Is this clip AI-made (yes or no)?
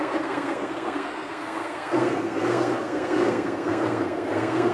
yes